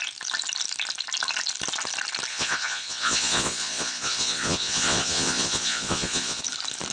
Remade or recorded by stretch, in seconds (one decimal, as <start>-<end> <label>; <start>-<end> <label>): 0.0-2.3 recorded; 2.3-6.4 remade; 6.4-6.9 recorded